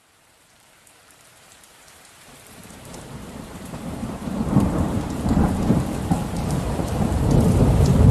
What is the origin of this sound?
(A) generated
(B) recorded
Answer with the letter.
A